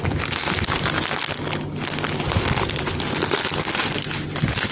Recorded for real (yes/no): yes